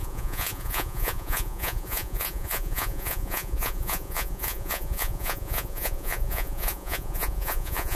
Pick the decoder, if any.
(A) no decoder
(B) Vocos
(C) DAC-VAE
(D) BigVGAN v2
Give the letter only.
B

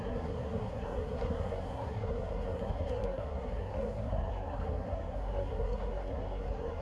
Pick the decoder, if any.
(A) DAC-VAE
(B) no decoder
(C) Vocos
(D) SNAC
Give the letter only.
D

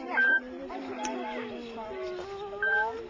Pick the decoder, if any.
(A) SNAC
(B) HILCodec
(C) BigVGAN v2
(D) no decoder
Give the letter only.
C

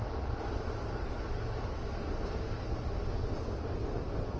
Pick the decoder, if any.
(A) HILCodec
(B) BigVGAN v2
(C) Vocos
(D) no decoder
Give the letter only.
D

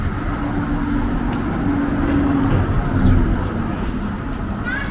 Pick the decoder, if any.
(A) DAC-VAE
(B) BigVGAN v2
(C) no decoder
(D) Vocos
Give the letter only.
C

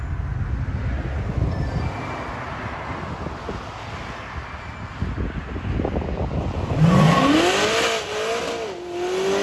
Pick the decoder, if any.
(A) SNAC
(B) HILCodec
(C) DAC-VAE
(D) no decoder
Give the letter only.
D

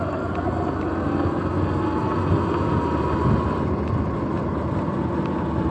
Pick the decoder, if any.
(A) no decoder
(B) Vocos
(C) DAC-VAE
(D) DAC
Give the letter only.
A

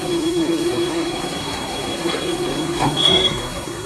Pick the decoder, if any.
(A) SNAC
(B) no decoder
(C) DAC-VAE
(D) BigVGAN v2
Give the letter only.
A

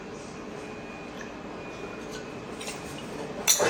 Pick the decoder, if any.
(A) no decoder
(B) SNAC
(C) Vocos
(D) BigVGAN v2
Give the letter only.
A